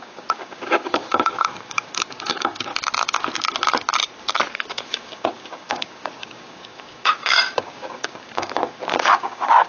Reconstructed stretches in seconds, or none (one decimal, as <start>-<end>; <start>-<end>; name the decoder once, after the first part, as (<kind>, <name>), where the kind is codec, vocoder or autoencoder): 0.0-2.7 (codec, DAC); 4.7-9.7

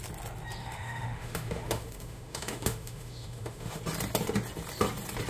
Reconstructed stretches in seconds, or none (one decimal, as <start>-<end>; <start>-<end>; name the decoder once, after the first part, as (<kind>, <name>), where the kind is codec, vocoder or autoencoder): 0.6-3.8 (autoencoder, DAC-VAE)